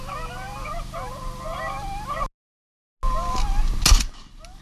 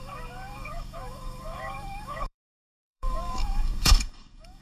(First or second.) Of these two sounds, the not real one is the second